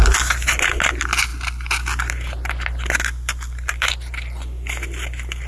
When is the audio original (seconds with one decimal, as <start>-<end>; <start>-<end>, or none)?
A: 0.0-5.5

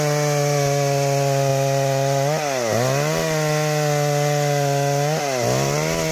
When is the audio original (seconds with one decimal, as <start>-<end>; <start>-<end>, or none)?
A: 0.0-6.1